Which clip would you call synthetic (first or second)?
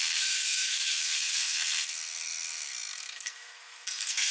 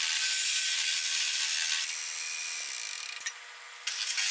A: first